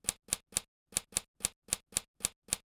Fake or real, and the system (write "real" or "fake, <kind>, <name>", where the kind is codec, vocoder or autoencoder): real